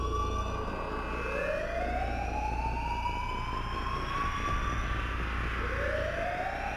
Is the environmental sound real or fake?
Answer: real